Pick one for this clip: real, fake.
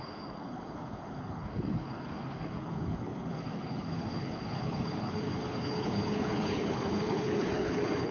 fake